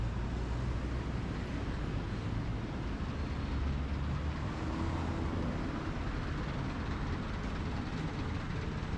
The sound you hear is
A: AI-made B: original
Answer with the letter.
B